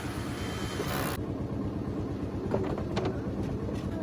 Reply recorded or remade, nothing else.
recorded